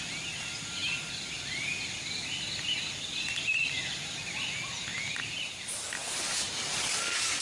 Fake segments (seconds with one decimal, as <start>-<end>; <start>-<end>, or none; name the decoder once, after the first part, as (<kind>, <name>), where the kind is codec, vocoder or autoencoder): none